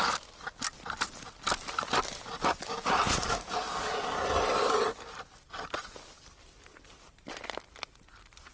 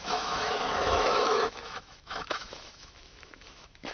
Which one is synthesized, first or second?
second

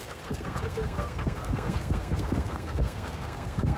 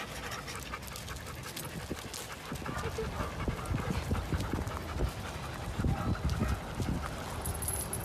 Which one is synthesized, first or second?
first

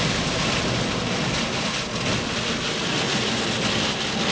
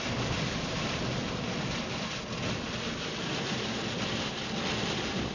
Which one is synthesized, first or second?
second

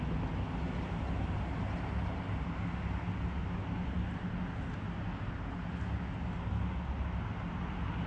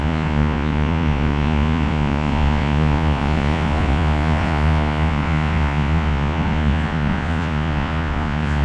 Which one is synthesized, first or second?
second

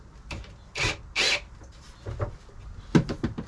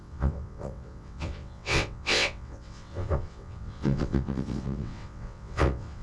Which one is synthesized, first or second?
second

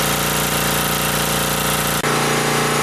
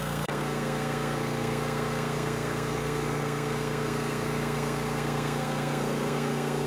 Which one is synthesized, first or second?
second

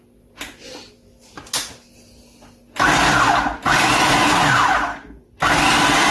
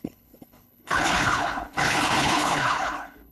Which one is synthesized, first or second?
second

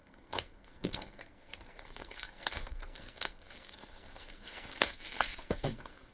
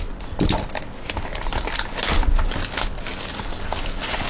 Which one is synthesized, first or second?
first